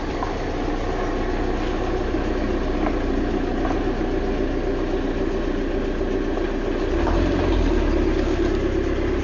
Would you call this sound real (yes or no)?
yes